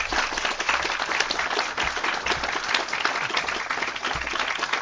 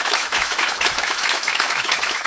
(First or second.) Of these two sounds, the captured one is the first